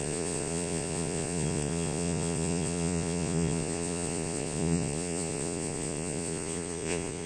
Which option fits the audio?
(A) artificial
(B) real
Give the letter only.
A